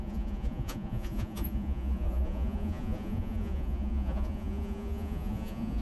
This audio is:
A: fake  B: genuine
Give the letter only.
A